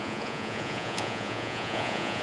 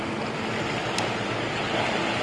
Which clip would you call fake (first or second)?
first